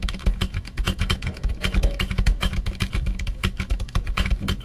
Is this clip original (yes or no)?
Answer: no